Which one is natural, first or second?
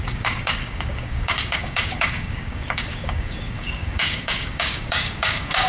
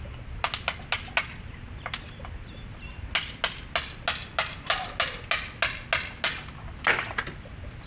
second